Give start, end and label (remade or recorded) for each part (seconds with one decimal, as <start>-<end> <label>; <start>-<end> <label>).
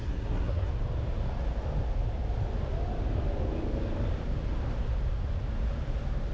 0.0-0.7 remade; 0.7-6.3 recorded